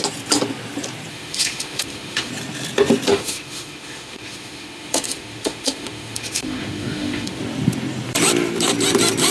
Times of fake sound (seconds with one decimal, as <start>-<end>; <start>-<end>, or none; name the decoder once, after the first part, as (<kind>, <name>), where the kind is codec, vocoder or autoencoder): 1.1-2.3 (autoencoder, DAC-VAE); 3.1-7.4